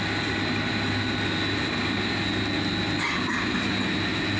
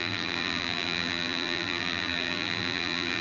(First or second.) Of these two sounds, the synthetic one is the second